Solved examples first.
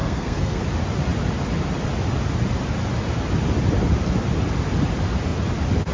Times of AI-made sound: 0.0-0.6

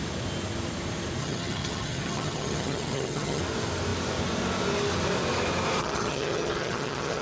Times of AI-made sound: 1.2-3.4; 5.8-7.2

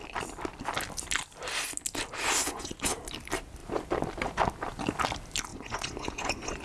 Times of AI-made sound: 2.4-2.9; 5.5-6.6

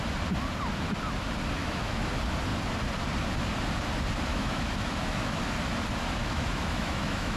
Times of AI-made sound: 1.6-2.1; 4.3-5.4; 6.2-7.4

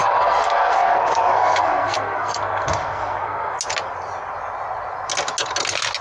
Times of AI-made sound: 0.0-3.6

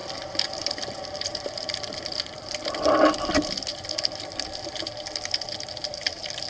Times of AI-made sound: 0.0-3.7; 6.1-6.5

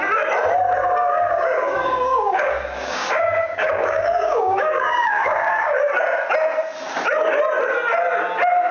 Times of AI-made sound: 0.8-5.9

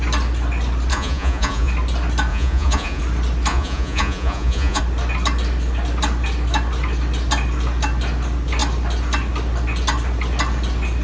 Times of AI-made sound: 0.9-1.7; 2.3-3.0; 3.5-4.8